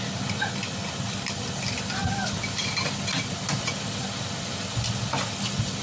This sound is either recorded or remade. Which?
recorded